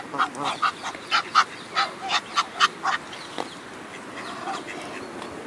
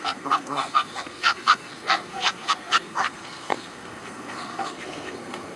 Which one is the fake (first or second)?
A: second